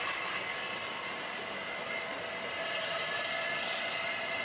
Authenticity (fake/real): real